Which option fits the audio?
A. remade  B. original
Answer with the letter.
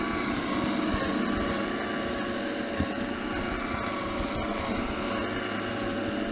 B